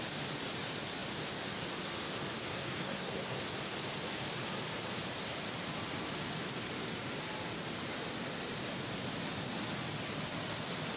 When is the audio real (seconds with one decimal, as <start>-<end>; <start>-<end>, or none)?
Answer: 0.0-2.4; 3.4-11.0